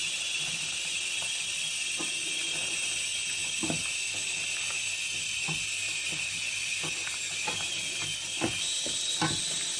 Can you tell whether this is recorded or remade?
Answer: recorded